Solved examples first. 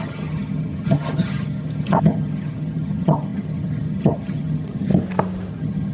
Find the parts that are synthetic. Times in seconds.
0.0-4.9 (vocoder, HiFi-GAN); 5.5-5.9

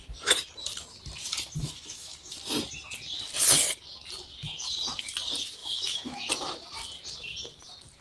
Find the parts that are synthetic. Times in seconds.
1.6-2.4 (autoencoder, DAC-VAE); 5.6-6.3